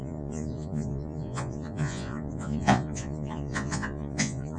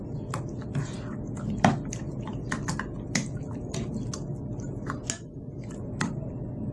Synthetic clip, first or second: first